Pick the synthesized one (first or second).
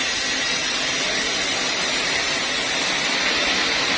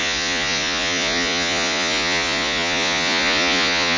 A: second